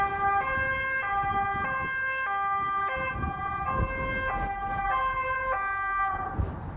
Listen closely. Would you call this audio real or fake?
real